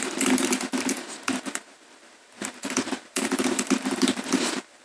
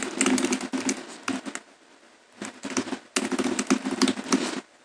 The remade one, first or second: first